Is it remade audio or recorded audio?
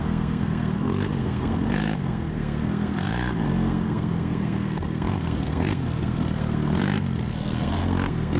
remade